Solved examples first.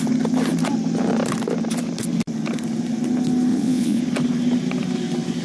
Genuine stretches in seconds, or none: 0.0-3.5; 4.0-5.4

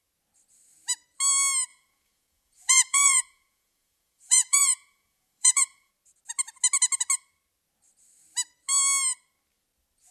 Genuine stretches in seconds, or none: 0.0-1.7; 5.9-10.1

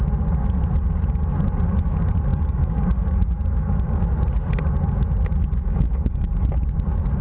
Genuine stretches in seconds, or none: 0.0-2.3; 4.0-5.6; 6.3-7.2

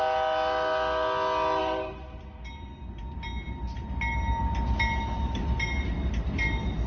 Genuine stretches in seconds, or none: 0.0-1.6; 2.2-6.9

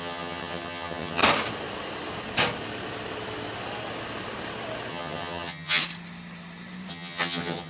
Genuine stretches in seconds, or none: 1.2-4.9; 5.8-6.9

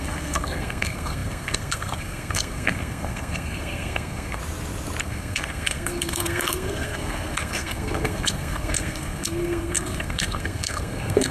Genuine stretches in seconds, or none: 4.4-5.0

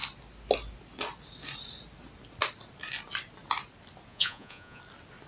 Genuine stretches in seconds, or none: 0.0-4.1; 4.8-5.3

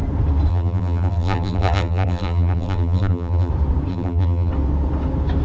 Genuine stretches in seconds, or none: 0.0-0.5; 3.5-3.9; 4.5-5.4